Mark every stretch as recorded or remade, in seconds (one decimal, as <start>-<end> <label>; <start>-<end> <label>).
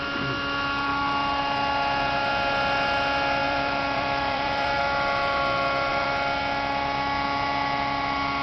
0.0-3.4 recorded; 3.4-4.8 remade; 4.8-5.9 recorded; 5.9-6.4 remade; 6.4-8.4 recorded